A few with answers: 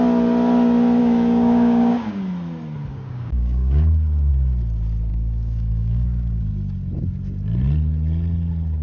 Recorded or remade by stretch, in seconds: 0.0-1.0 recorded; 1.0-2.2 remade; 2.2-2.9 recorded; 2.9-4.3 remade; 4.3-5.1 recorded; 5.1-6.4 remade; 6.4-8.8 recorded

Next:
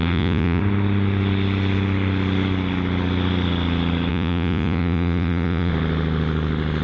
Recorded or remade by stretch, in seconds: 0.0-0.6 remade; 0.6-4.1 recorded; 4.1-5.7 remade; 5.7-6.8 recorded

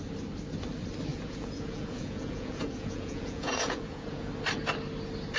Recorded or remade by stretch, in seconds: 0.0-1.1 recorded; 1.1-4.3 remade; 4.3-5.4 recorded

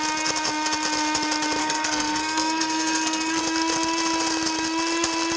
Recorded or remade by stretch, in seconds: 0.0-1.6 recorded; 1.6-3.4 remade; 3.4-5.4 recorded